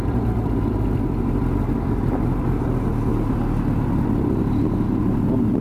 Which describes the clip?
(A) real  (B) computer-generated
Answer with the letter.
A